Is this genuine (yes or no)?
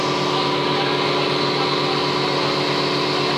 yes